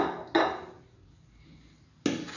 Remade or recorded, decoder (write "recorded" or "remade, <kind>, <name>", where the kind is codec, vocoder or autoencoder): recorded